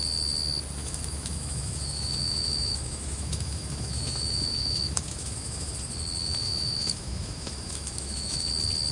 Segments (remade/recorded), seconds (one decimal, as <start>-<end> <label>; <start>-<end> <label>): 0.0-0.8 recorded; 0.8-5.7 remade; 5.7-6.2 recorded; 6.2-8.5 remade; 8.5-8.9 recorded

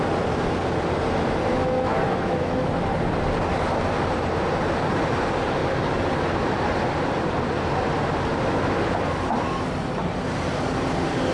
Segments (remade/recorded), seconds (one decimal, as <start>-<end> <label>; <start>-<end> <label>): 0.0-1.5 recorded; 1.5-2.7 remade; 2.7-11.3 recorded